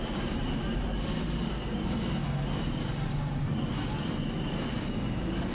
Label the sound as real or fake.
real